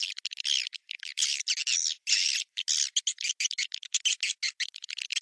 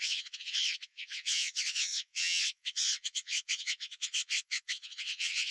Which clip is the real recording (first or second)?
first